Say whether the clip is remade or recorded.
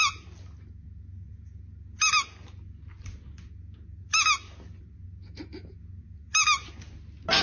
recorded